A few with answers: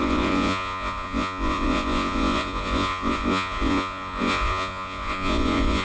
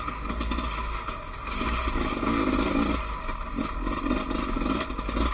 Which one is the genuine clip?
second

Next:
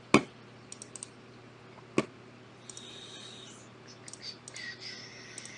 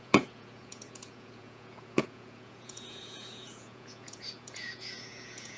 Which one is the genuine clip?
first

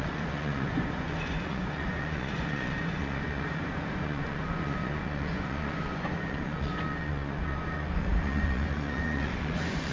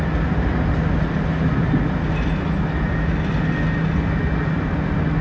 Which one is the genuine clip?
second